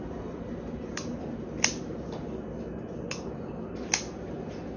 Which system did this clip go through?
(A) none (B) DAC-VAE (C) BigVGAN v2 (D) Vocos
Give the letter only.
A